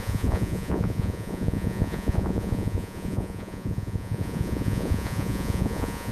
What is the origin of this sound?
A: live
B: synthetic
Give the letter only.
B